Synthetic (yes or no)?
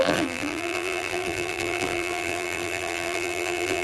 yes